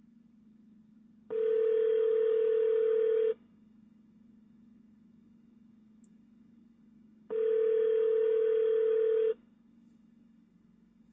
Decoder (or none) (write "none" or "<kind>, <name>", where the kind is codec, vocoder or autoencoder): autoencoder, DAC-VAE